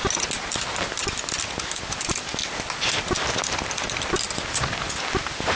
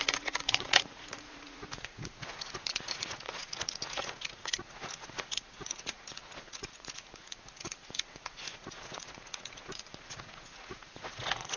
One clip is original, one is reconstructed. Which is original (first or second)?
first